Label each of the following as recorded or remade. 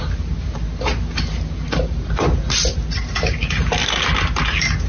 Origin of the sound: recorded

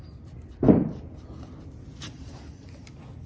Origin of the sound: recorded